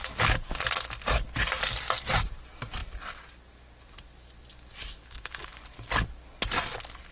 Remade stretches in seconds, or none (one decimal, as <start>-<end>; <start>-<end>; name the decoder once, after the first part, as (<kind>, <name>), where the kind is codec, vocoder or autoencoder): 5.0-5.6 (autoencoder, DAC-VAE)